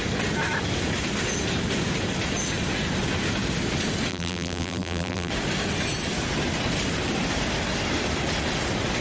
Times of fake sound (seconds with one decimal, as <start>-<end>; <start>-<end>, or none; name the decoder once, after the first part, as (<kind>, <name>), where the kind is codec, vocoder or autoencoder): 4.1-5.3 (vocoder, BigVGAN v2)